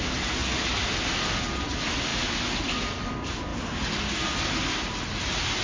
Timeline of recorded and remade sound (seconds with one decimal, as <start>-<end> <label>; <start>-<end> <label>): 0.0-5.6 recorded